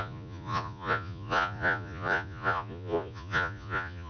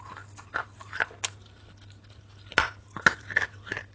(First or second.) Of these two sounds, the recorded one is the second